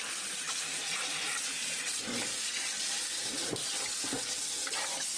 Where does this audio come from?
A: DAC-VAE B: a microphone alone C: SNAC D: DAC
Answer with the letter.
B